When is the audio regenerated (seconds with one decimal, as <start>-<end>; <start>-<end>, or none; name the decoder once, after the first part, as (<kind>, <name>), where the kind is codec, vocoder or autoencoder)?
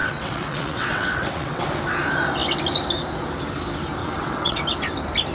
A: 0.0-1.7 (vocoder, WaveNeXt); 4.0-4.6